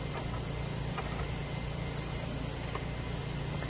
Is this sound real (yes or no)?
yes